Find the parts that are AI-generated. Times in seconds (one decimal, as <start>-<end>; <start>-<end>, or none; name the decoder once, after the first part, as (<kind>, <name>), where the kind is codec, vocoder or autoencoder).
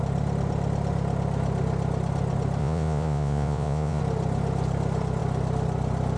2.6-4.0 (vocoder, Vocos)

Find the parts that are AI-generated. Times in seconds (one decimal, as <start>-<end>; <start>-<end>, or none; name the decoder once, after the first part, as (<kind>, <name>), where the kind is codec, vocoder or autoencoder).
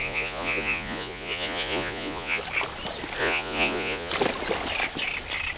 0.0-2.4 (vocoder, Vocos); 3.2-4.1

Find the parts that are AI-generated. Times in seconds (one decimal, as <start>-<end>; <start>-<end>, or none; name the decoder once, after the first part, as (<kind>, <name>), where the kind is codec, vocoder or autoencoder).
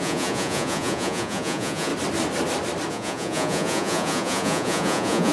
0.0-1.9 (vocoder, Vocos); 2.9-5.3